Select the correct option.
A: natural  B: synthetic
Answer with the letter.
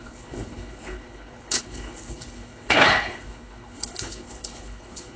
B